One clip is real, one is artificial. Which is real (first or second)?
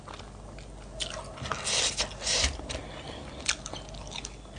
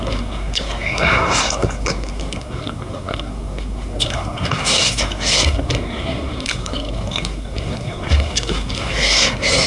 first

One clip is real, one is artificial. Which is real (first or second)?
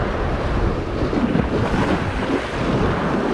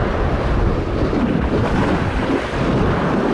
first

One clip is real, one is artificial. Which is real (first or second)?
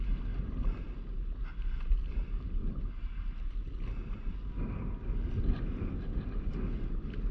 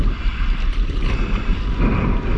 first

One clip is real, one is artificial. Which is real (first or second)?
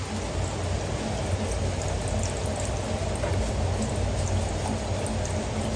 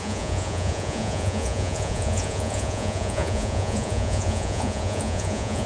first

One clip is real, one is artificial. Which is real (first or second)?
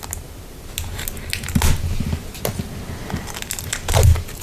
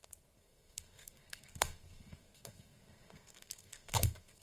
first